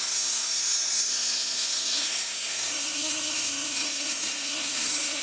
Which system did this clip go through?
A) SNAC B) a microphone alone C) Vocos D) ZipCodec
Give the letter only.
A